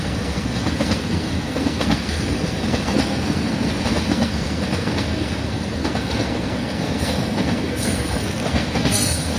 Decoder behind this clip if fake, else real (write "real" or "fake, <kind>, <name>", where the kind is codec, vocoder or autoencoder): fake, codec, SNAC